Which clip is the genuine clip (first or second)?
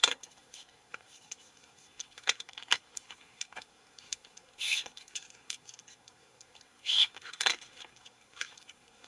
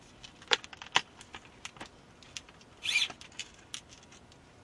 second